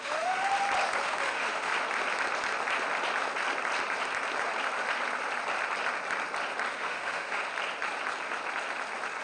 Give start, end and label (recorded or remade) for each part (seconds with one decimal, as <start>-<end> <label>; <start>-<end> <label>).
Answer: 0.0-0.5 remade; 0.5-1.0 recorded; 1.0-1.7 remade; 1.7-6.7 recorded; 6.7-7.4 remade; 7.4-9.2 recorded